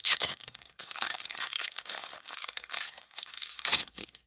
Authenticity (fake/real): fake